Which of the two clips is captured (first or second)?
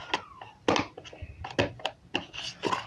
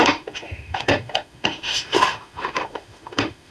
first